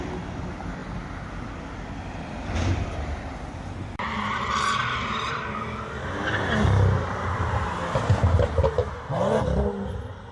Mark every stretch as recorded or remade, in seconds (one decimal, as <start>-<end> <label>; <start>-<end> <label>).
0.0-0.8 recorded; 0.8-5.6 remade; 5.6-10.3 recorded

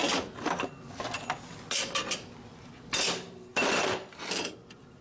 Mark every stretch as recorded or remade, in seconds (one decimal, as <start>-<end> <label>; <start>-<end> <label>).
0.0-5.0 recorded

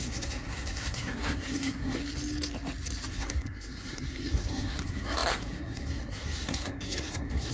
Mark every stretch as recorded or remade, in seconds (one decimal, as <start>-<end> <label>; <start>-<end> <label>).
0.0-2.0 remade; 2.0-3.1 recorded; 3.1-7.5 remade